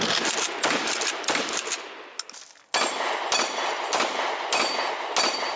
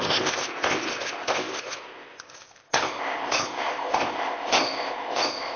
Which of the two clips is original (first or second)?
first